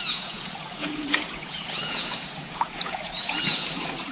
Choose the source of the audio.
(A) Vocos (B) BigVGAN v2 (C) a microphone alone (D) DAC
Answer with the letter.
A